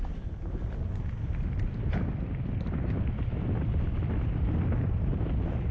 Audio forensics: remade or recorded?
recorded